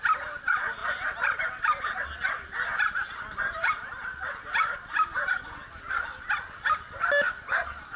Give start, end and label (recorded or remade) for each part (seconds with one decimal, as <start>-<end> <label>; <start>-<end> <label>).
0.0-2.7 remade; 2.7-7.5 recorded; 7.5-8.0 remade